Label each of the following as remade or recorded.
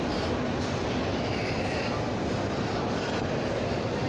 recorded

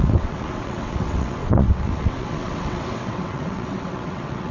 remade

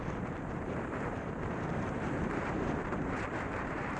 remade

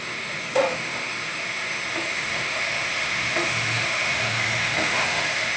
remade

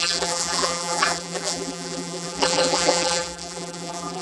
remade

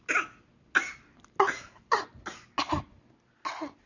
recorded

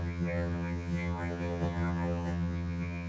remade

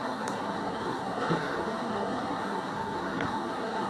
remade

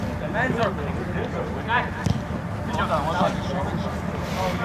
recorded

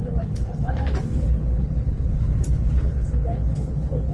remade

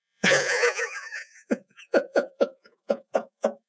remade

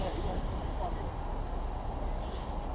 recorded